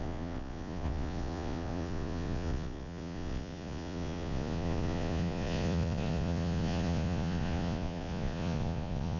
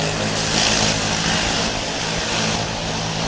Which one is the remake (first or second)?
first